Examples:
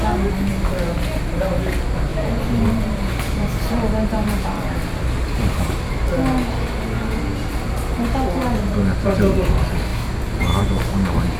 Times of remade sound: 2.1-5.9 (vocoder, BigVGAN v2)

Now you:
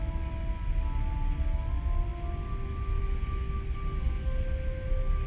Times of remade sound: none

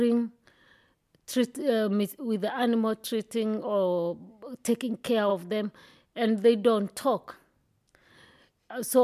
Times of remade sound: none

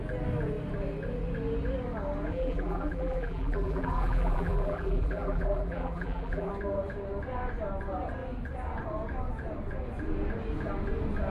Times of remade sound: 2.3-6.5 (vocoder, BigVGAN v2)

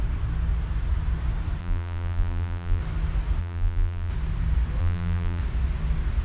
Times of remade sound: 1.6-2.8 (vocoder, BigVGAN v2); 3.4-4.1; 4.8-5.4

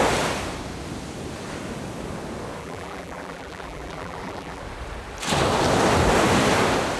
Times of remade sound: 2.6-4.6 (vocoder, BigVGAN v2)

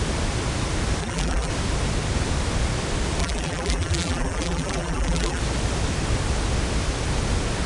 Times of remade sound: 1.0-1.5 (vocoder, BigVGAN v2); 3.2-5.4

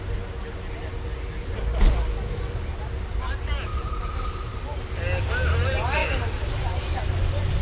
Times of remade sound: 3.7-4.9 (vocoder, BigVGAN v2)